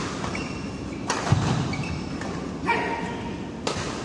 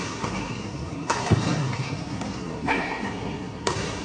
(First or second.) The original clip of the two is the first